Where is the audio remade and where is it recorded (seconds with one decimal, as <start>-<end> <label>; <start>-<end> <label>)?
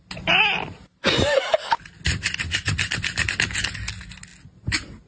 0.0-5.1 recorded